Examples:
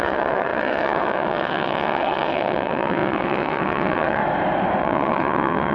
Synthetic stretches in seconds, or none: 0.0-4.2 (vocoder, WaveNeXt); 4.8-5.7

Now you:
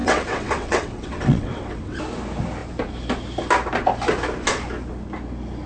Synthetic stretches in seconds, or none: 0.0-2.0 (vocoder, WaveNeXt)

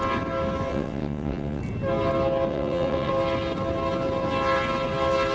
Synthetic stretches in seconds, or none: 0.7-1.6 (vocoder, WaveNeXt); 2.5-3.1